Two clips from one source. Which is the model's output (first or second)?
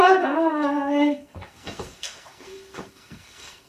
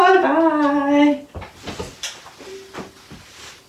first